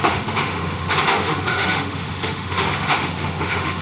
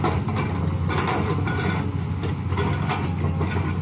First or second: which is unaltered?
second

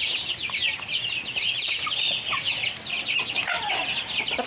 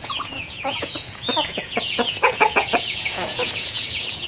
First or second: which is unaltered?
first